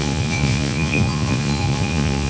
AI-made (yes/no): yes